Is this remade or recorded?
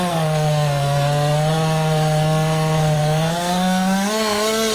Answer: remade